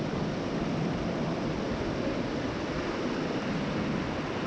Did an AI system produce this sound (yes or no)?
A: no